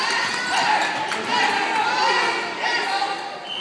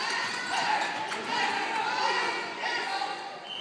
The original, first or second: first